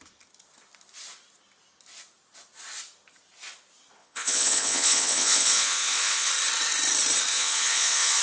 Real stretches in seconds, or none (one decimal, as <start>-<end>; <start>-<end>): 0.0-4.0; 6.3-7.3